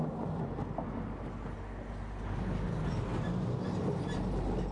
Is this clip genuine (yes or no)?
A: yes